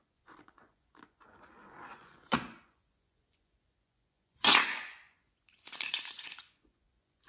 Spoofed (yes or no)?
yes